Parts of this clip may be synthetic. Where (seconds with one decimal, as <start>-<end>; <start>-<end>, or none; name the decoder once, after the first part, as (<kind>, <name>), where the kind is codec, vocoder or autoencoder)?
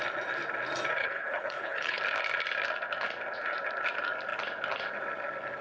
1.0-2.0 (codec, HILCodec)